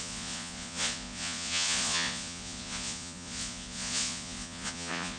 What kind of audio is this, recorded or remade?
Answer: remade